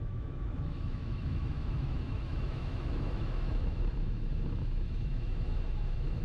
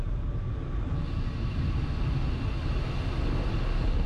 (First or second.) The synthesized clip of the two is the first